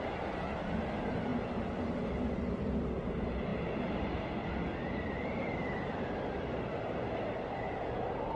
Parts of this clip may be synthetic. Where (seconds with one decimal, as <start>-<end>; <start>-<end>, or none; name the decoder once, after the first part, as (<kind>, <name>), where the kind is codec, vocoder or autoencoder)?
none